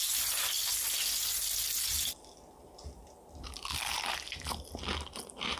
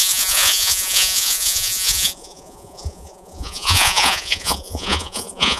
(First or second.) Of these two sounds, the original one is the first